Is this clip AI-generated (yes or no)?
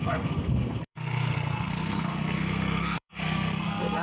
yes